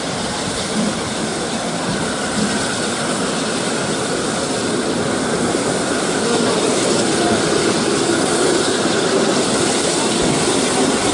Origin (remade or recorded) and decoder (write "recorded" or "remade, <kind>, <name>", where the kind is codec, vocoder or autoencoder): recorded